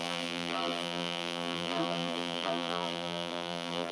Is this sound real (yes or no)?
no